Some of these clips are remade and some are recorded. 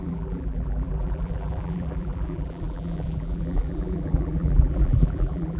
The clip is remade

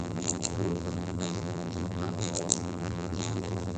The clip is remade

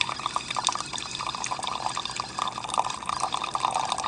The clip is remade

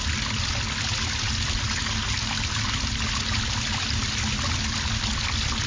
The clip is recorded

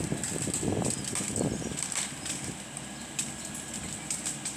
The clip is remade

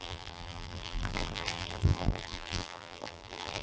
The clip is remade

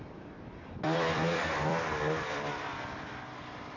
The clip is remade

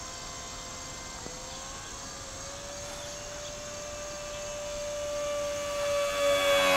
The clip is recorded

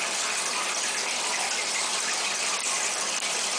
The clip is recorded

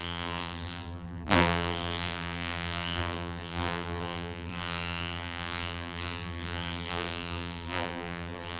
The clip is remade